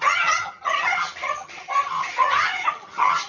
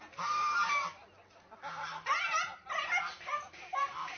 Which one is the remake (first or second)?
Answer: first